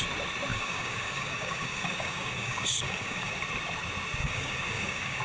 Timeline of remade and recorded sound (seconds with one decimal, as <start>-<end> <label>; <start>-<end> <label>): 0.0-0.5 recorded; 0.5-3.3 remade; 3.3-4.2 recorded; 4.2-5.2 remade